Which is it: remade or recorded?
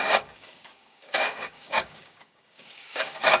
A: remade